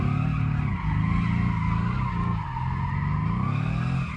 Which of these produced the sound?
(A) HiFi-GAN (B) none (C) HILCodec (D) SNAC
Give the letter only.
B